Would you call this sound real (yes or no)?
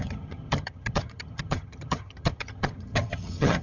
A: no